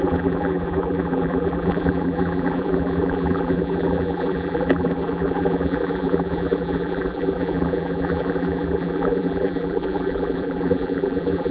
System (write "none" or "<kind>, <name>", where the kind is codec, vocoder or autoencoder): vocoder, BigVGAN v2